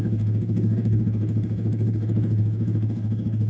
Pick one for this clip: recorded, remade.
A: remade